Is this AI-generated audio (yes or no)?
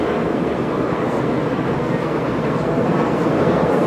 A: yes